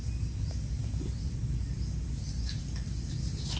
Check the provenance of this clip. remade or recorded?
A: recorded